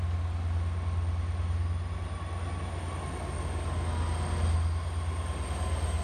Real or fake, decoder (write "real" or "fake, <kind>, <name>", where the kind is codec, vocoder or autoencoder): real